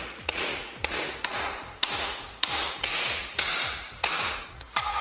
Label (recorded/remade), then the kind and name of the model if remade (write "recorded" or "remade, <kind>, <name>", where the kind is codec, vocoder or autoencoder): remade, vocoder, Vocos